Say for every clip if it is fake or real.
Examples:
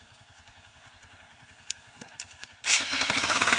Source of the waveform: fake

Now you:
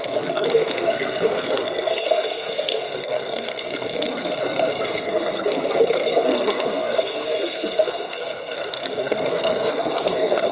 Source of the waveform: fake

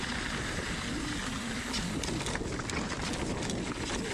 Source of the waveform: real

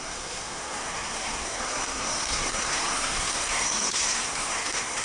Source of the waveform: fake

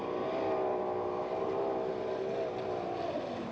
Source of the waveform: real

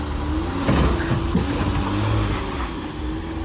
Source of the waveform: real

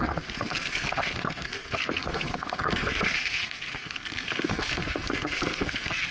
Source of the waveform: fake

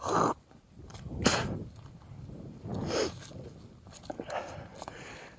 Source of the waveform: real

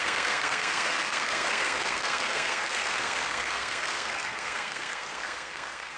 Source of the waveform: fake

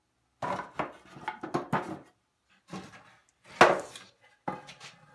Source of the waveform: real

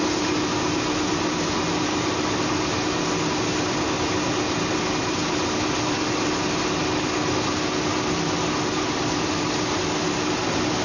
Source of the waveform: real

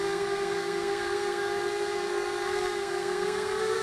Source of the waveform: fake